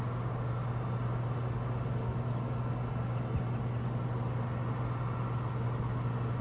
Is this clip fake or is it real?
real